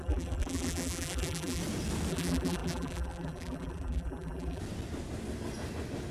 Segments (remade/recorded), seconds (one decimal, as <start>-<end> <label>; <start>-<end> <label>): 0.0-1.6 remade; 1.6-2.1 recorded; 2.1-4.6 remade; 4.6-6.1 recorded